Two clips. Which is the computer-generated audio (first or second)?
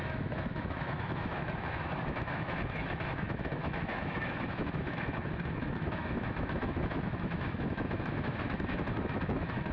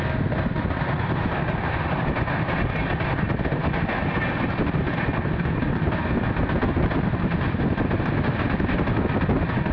first